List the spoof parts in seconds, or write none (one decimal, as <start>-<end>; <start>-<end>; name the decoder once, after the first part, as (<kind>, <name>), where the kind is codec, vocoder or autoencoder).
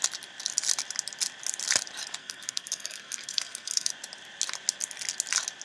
2.2-3.9 (codec, SNAC)